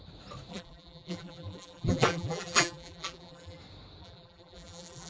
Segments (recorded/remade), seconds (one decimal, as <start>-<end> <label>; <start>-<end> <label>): 0.0-0.5 recorded; 0.5-3.6 remade; 3.6-4.0 recorded; 4.0-5.1 remade